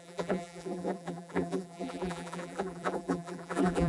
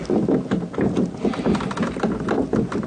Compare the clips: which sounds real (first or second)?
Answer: second